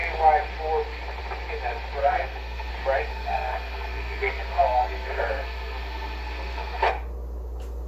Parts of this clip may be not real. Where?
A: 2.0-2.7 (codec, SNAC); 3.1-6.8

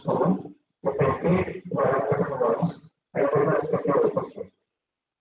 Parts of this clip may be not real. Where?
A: none

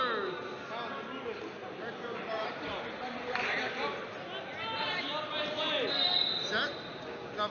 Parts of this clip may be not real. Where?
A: 1.6-4.1 (vocoder, BigVGAN v2); 4.5-5.1

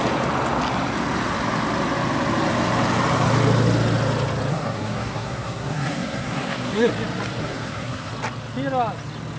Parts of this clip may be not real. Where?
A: 4.5-6.9 (codec, SNAC); 7.4-8.1